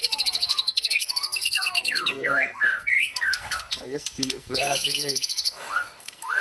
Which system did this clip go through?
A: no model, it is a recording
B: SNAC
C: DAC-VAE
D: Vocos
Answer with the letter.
B